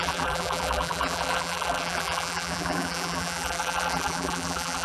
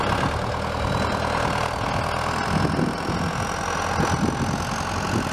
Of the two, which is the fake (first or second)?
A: first